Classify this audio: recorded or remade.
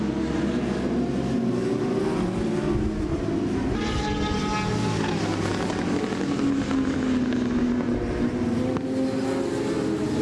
recorded